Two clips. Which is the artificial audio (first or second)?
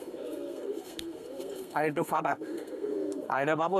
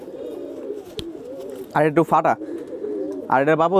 first